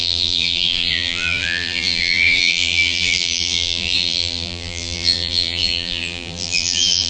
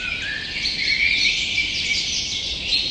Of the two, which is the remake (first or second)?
first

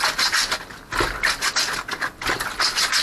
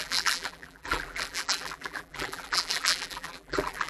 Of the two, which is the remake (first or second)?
second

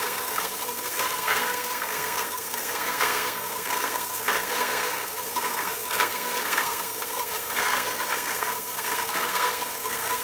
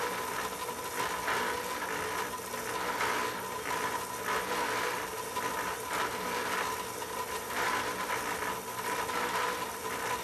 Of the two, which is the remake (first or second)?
first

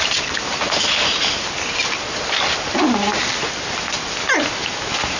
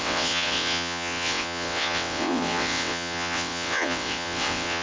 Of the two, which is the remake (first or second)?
second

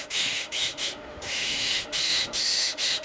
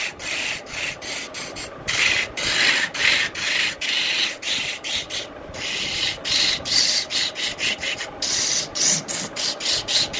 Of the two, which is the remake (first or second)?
first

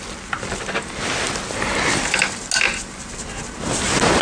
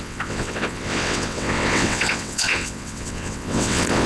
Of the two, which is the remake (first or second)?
second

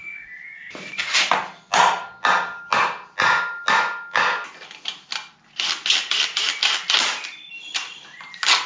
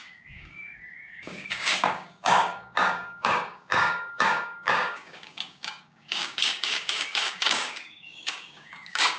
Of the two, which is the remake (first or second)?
second